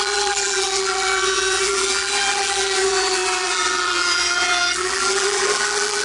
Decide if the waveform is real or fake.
fake